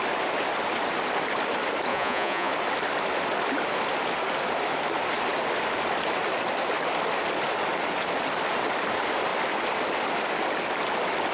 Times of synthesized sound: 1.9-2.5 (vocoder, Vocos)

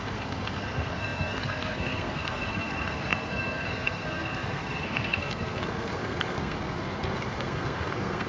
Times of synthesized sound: 0.0-8.3 (codec, SNAC)